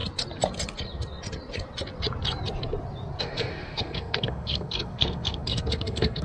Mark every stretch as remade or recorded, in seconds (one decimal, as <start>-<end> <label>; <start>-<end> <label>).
0.0-3.2 recorded; 3.2-6.2 remade